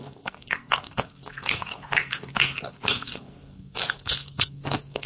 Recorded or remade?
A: remade